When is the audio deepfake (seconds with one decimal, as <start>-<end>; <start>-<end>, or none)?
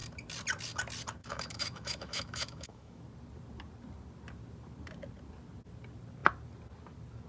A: 1.2-3.0